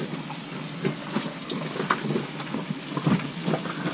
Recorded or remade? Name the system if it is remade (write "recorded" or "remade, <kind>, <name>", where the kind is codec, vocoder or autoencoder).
recorded